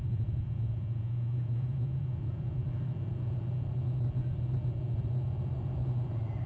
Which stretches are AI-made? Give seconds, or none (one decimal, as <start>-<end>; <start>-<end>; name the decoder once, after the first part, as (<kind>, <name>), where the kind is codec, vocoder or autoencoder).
0.0-2.6 (vocoder, Vocos)